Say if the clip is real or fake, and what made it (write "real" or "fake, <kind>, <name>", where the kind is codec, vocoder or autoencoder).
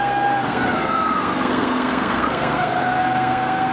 fake, codec, SNAC